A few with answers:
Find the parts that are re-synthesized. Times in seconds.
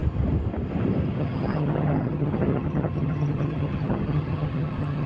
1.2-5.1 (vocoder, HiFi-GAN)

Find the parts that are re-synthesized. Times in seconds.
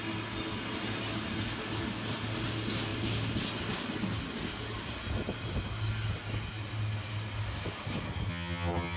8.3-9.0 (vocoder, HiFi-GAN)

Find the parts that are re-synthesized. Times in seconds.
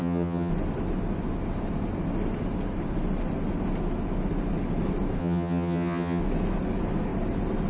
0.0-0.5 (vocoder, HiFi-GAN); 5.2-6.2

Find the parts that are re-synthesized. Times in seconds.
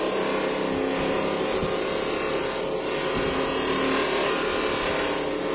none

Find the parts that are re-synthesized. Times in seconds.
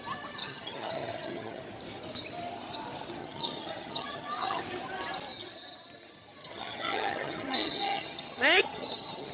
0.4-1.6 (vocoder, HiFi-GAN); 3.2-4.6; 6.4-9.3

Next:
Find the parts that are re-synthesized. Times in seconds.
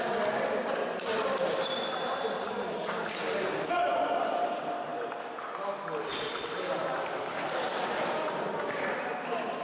none